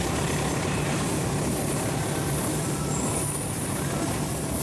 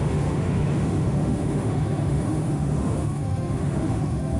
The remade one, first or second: second